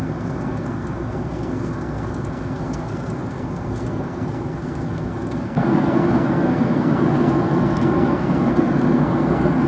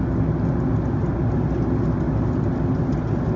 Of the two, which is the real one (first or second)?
second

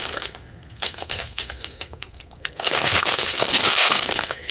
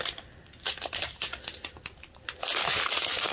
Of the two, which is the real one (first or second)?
second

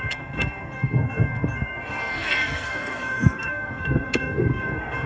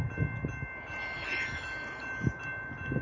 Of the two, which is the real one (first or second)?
second